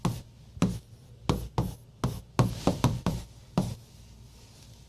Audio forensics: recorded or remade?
recorded